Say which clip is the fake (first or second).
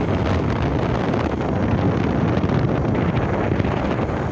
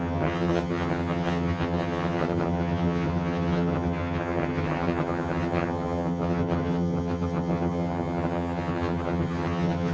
second